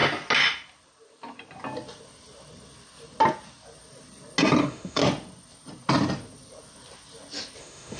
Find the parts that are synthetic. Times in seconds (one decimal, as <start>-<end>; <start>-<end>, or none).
4.6-5.0; 7.6-8.0

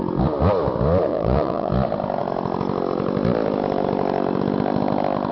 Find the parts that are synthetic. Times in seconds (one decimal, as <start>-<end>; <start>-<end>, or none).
1.1-1.7